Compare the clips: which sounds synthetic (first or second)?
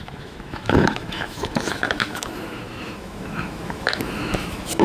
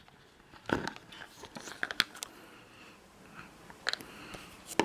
first